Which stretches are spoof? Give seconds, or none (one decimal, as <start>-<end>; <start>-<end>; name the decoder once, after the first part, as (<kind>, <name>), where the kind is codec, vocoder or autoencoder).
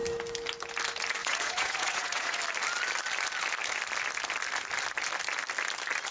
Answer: 1.2-2.4 (vocoder, Vocos)